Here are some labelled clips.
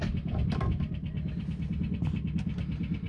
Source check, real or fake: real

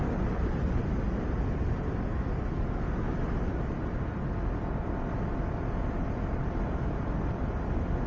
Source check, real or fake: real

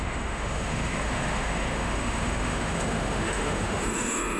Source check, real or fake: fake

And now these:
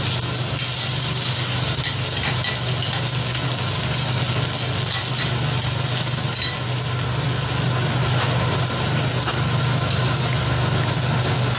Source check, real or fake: real